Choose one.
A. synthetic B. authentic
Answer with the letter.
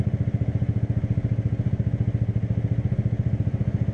B